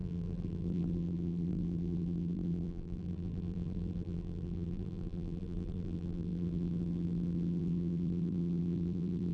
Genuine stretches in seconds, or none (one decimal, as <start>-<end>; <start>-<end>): none

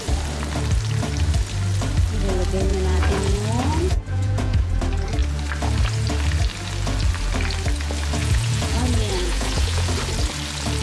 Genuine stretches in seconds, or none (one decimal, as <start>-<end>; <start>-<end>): 0.0-2.7; 4.8-8.2; 9.9-10.8

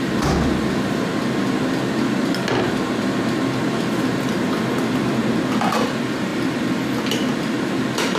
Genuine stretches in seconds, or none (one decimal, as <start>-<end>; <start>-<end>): 0.0-8.2

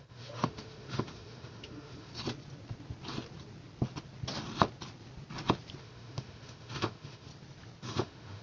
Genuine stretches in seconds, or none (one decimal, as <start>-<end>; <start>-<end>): 2.1-5.8; 7.3-7.8

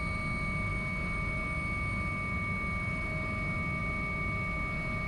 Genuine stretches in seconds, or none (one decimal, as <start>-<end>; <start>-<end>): 0.0-5.1

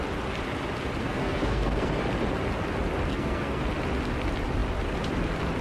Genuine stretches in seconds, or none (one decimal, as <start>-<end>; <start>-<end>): 0.0-1.0; 2.0-3.1; 3.6-5.6